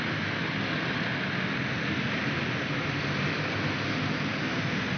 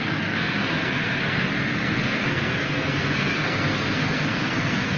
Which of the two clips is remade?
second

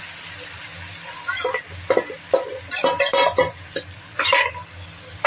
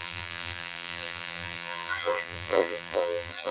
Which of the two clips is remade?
second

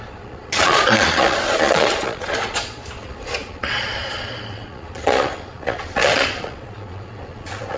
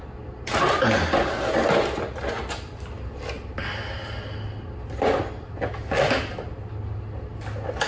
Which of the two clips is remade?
first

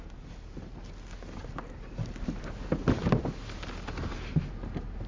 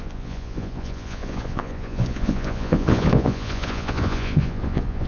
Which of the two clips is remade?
second